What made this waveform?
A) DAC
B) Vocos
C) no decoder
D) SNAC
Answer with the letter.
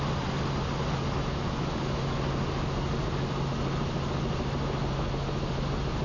C